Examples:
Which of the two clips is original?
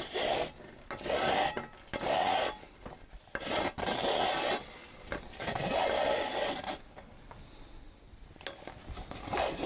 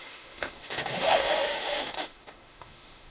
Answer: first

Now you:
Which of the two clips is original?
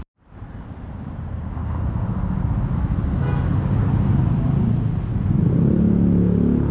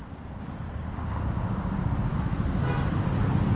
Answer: first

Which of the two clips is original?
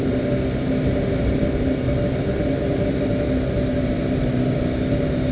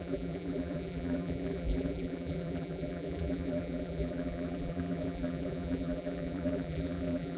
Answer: first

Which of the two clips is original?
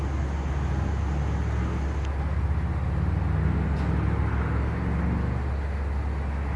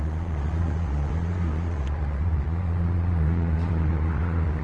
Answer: first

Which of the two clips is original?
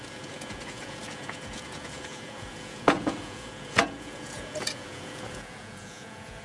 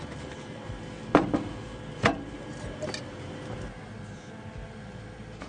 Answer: second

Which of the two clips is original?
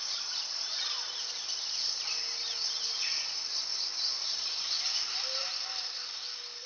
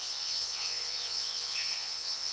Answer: first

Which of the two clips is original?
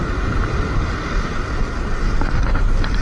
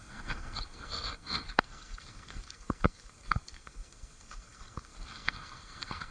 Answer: first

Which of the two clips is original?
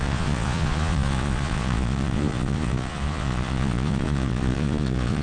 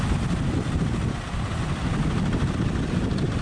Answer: second